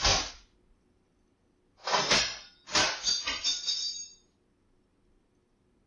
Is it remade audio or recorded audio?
recorded